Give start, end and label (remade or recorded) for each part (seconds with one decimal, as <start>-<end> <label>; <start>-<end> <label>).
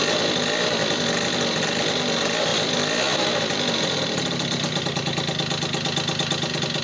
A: 0.0-6.8 recorded